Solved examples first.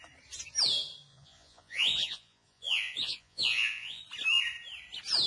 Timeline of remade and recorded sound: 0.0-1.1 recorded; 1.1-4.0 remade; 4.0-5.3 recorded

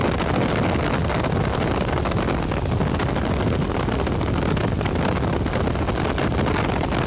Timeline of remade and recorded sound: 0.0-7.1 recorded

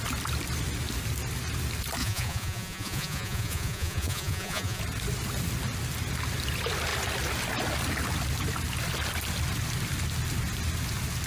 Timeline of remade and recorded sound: 0.0-2.0 recorded; 2.0-4.8 remade; 4.8-11.3 recorded

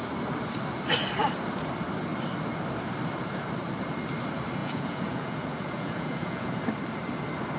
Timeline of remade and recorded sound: 0.0-4.6 recorded; 4.6-6.6 remade; 6.6-7.6 recorded

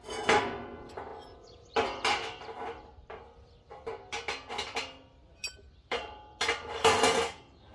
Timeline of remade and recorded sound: 0.0-7.7 recorded

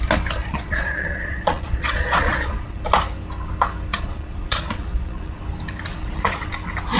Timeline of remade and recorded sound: 0.0-0.4 recorded; 0.4-2.8 remade; 2.8-3.9 recorded; 3.9-5.4 remade; 5.4-5.9 recorded; 5.9-6.5 remade; 6.5-7.0 recorded

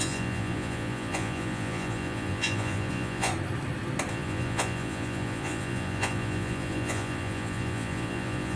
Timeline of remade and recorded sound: 0.0-3.3 remade; 3.3-4.1 recorded; 4.1-8.6 remade